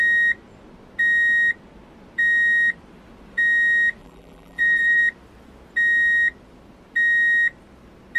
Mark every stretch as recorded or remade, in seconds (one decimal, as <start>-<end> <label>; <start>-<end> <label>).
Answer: 0.0-4.0 recorded; 4.0-5.0 remade; 5.0-8.2 recorded